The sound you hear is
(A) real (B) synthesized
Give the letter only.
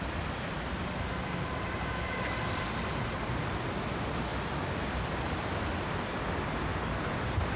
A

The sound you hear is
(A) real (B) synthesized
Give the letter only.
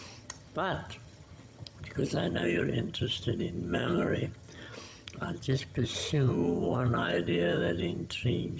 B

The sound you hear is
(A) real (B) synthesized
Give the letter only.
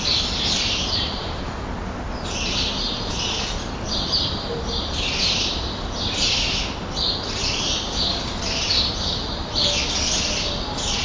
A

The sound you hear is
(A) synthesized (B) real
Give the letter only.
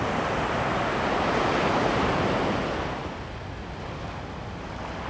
B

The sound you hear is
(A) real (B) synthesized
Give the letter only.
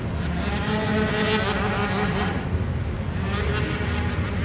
A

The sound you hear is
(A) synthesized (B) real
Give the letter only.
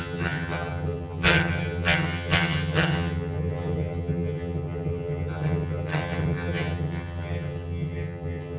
A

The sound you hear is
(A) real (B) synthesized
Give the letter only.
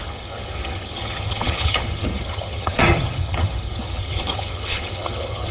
B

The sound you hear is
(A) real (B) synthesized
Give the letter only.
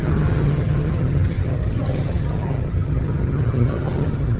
B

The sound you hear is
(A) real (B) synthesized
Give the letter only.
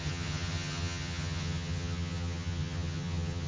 B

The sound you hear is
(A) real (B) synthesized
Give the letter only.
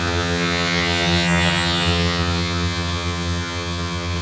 B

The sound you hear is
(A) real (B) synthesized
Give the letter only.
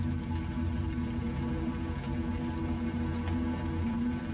A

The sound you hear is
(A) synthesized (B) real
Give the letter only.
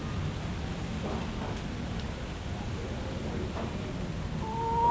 B